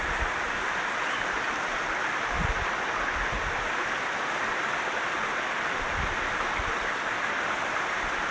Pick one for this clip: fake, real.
real